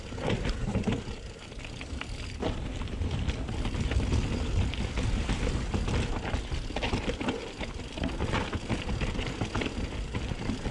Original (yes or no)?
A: yes